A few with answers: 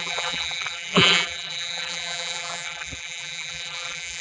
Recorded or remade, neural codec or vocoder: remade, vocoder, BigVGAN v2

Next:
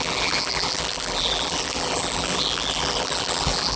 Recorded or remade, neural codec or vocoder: remade, vocoder, BigVGAN v2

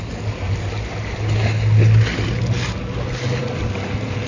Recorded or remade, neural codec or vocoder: recorded